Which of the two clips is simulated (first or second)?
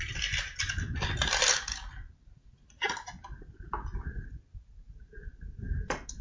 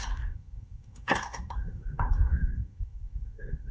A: second